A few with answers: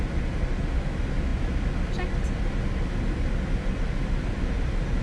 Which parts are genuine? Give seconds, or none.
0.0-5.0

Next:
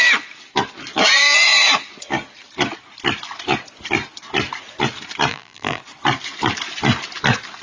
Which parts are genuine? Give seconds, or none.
0.0-5.3; 5.8-7.6